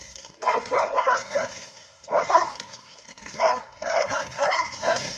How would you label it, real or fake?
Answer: fake